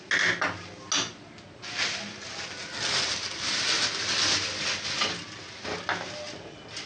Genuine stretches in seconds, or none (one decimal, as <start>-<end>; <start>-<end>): 0.0-6.9